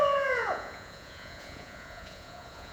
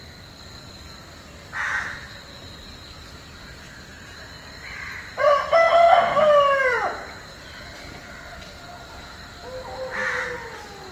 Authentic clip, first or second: second